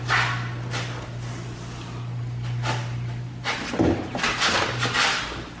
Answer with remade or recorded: recorded